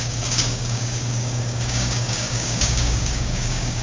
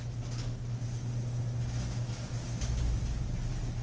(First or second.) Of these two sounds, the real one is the second